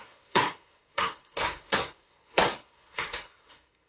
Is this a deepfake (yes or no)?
yes